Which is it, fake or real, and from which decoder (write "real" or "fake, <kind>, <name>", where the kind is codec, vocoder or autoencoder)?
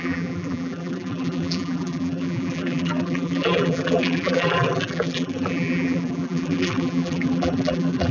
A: fake, vocoder, BigVGAN v2